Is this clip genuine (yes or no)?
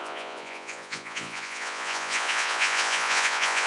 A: no